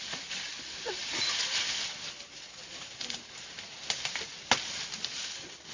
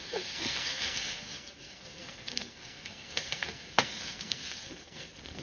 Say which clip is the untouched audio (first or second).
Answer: first